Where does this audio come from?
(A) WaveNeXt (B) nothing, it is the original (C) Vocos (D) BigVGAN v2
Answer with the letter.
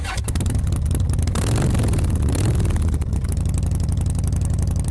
D